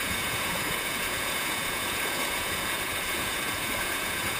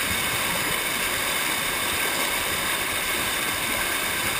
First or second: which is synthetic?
first